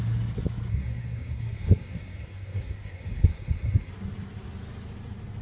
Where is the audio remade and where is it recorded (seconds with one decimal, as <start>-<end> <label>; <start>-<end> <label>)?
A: 0.0-0.7 recorded; 0.7-3.9 remade; 3.9-5.4 recorded